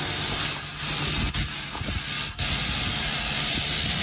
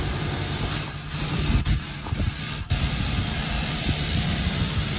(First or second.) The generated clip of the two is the second